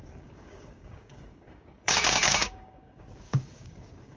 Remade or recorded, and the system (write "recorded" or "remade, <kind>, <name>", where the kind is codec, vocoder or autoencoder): remade, codec, DAC